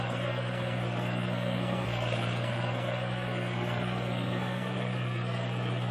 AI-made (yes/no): yes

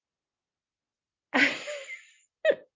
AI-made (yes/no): no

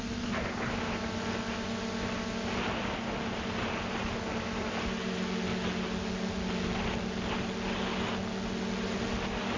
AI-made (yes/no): no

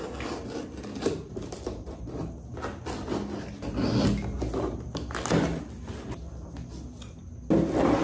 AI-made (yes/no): no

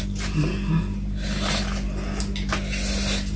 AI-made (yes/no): no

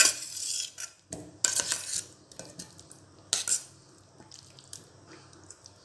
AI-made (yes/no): no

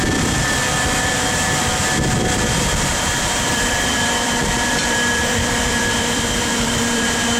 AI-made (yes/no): yes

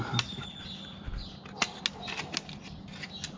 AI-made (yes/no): no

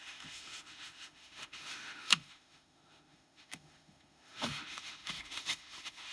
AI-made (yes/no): yes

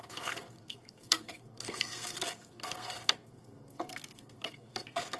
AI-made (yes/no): yes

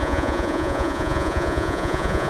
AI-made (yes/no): yes